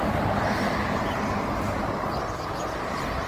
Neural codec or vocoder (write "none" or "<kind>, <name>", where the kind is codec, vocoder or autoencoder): none